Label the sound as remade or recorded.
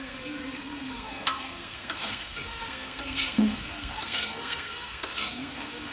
remade